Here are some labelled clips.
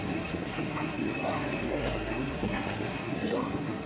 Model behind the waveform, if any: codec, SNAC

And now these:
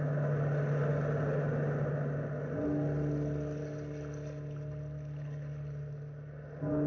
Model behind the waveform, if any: none